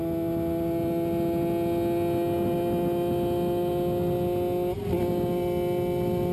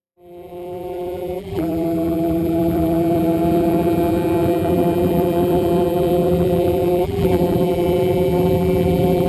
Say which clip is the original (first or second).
first